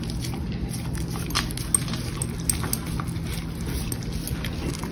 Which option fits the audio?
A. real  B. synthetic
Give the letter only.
A